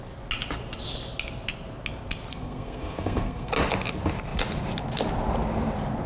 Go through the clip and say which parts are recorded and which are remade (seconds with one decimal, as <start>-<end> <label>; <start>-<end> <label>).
0.0-2.3 recorded; 2.3-3.5 remade; 3.5-6.1 recorded